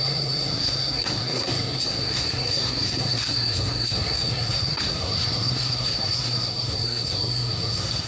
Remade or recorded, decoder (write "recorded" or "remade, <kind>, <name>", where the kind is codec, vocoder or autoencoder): remade, codec, SNAC